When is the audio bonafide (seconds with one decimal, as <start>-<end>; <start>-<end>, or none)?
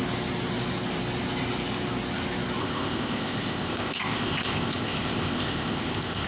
0.0-2.6